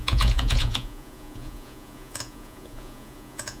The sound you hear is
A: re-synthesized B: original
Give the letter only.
A